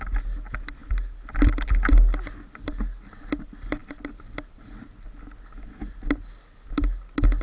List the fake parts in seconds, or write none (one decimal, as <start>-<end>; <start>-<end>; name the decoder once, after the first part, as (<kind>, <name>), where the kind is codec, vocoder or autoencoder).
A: none